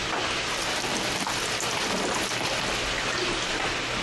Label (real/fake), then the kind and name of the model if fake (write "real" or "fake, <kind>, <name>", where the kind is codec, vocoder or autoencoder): real